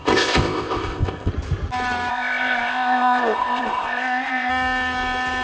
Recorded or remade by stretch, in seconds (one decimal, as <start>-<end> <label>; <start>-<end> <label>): 0.0-1.3 remade; 1.3-2.1 recorded; 2.1-4.5 remade; 4.5-5.4 recorded